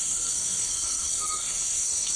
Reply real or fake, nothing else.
fake